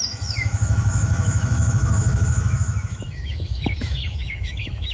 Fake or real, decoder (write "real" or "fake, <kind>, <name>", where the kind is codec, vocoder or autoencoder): fake, autoencoder, DAC-VAE